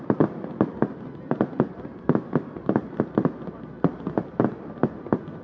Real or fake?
real